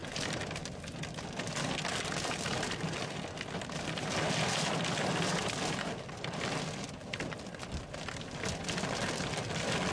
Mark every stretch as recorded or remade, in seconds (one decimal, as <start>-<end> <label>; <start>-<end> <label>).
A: 0.0-9.9 recorded